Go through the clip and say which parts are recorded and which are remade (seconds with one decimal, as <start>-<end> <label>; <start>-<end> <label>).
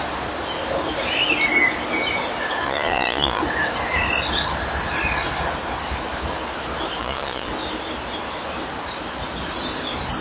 0.0-2.6 recorded; 2.6-3.4 remade; 3.4-7.0 recorded; 7.0-7.5 remade; 7.5-10.2 recorded